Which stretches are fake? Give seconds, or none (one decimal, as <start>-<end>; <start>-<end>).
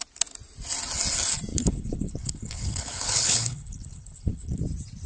1.5-4.6